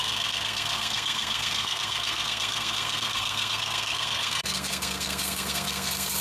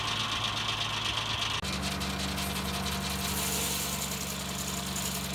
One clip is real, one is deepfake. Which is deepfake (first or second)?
first